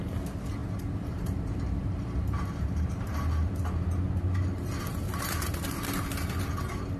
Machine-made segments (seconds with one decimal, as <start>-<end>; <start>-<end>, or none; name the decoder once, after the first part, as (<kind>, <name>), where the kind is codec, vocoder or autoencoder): 0.6-3.5 (vocoder, BigVGAN v2); 5.0-5.5

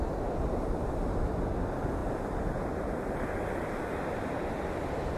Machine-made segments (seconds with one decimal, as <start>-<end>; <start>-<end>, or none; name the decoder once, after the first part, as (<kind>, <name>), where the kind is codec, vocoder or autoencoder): none

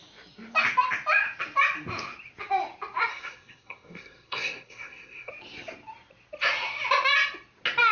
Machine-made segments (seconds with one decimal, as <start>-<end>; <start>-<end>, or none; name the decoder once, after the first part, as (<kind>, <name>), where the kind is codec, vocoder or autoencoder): 3.1-5.3 (codec, SNAC)

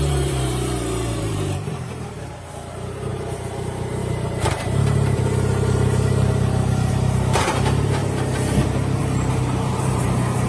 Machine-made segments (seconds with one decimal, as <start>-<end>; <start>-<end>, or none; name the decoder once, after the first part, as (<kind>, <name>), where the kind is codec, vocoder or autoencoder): 0.0-8.0 (vocoder, BigVGAN v2); 9.0-10.5

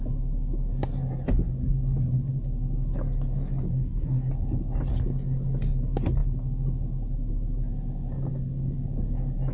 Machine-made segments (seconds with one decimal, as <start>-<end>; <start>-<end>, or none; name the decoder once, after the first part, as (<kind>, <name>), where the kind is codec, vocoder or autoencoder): 3.7-4.3 (codec, SNAC)

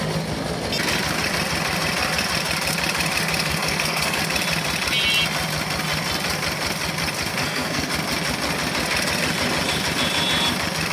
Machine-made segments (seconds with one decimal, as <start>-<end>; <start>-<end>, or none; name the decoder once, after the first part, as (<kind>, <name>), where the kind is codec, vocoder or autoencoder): 3.4-4.2 (codec, SNAC); 7.3-7.9

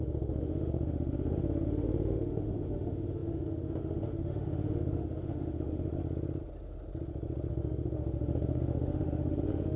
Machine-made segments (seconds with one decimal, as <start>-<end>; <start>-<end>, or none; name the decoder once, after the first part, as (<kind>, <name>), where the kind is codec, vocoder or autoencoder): 0.0-5.9 (autoencoder, DAC-VAE); 7.5-9.8

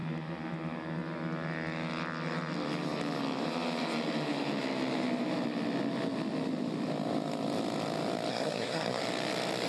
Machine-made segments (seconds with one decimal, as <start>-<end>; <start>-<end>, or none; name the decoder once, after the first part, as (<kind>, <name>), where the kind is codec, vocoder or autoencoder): 8.3-9.0 (codec, SNAC)